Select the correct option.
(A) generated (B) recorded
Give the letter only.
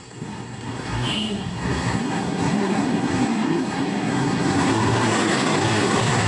A